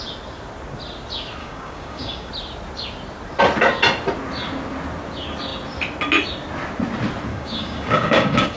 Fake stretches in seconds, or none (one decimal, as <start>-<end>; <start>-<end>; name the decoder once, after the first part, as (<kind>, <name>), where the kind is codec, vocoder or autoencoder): 1.4-2.3 (codec, DAC); 7.3-8.6